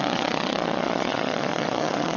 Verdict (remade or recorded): remade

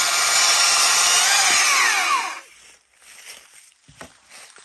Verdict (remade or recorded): recorded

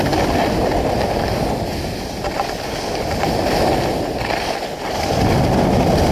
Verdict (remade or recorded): recorded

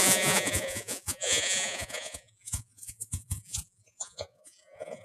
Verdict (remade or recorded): remade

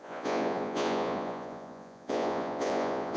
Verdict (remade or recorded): remade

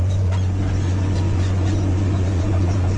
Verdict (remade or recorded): remade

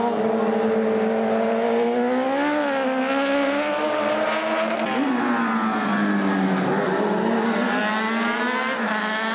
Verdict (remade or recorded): recorded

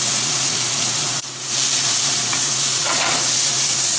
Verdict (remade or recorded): remade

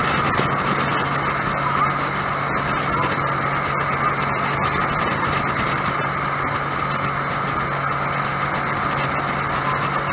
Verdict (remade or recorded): recorded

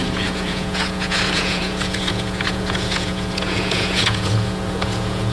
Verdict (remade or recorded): remade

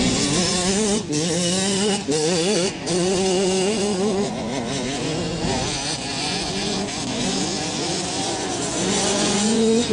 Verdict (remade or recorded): remade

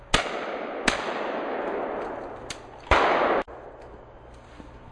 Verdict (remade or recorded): recorded